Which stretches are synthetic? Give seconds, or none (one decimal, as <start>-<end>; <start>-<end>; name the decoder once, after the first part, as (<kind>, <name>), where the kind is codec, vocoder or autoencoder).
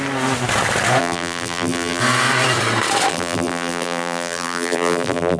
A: 1.0-2.0 (vocoder, BigVGAN v2); 3.1-5.4